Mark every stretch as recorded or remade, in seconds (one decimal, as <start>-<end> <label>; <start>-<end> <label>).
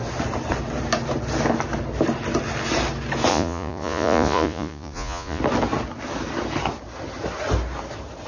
0.0-3.3 recorded; 3.3-5.4 remade; 5.4-8.3 recorded